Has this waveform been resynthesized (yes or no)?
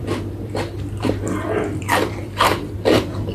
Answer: yes